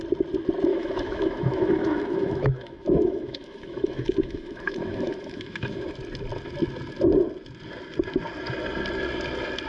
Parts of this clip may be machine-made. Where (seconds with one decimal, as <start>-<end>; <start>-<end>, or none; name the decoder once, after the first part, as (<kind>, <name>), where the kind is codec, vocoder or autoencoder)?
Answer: 0.7-5.9 (autoencoder, DAC-VAE)

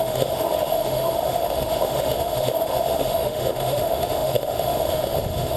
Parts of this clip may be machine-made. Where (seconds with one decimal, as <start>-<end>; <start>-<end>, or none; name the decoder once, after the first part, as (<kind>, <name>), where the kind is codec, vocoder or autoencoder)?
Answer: 0.0-5.6 (autoencoder, DAC-VAE)

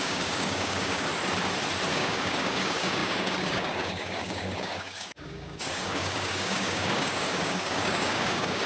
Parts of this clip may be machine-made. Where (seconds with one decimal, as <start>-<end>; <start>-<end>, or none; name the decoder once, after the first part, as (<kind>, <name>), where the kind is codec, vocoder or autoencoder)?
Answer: 0.0-1.1 (codec, DAC); 1.9-8.7

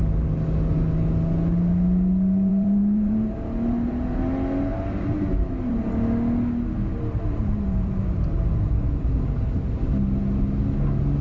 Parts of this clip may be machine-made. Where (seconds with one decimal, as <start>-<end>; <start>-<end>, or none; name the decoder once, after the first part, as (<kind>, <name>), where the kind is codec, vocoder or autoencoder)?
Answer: 2.5-4.2 (vocoder, BigVGAN v2); 4.7-5.8; 6.9-8.5

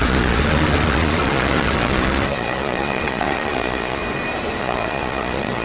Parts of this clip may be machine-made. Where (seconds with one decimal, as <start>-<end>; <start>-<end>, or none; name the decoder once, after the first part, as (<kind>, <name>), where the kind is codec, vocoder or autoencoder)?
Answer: 0.0-4.0 (vocoder, Vocos); 4.6-5.6

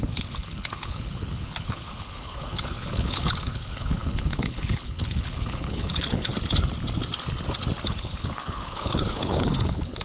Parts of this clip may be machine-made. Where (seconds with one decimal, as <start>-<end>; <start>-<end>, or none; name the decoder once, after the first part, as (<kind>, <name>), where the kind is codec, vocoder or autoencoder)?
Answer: 0.0-6.3 (codec, HILCodec); 7.9-10.0

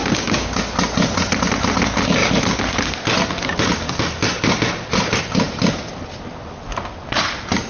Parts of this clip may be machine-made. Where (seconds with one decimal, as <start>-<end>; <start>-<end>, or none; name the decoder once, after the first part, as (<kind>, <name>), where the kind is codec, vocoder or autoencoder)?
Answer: 0.0-0.6 (codec, DAC)

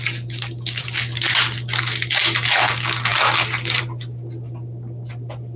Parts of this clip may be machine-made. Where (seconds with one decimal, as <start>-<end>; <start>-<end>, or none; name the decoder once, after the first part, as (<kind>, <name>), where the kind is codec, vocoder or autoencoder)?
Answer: none